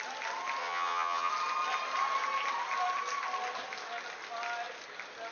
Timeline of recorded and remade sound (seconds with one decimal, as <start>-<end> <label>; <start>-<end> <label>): 0.0-0.6 recorded; 0.6-1.3 remade; 1.3-5.3 recorded